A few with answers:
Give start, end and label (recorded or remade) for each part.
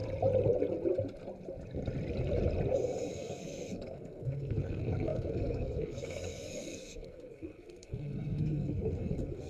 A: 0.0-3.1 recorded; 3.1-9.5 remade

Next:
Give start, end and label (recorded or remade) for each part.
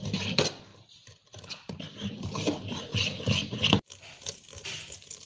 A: 0.0-0.7 recorded; 0.7-3.2 remade; 3.2-4.6 recorded; 4.6-5.3 remade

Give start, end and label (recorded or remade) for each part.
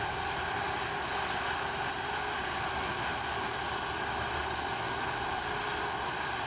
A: 0.0-6.5 recorded